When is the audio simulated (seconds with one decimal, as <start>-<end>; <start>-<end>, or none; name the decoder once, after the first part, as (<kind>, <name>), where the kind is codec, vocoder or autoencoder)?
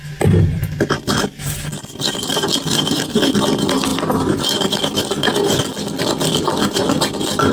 none